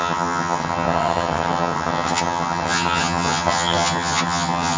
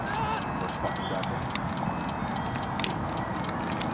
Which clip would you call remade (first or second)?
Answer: first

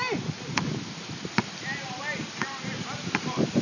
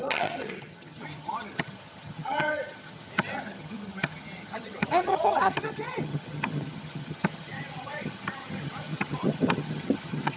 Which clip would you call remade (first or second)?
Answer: second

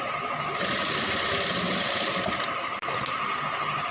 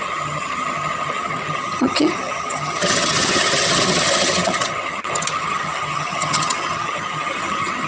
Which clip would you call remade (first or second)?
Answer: second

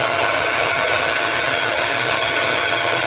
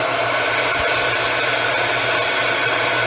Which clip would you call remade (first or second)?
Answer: first